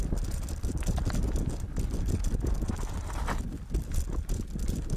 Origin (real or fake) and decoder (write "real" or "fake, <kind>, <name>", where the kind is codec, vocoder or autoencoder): real